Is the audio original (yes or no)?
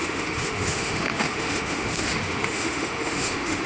no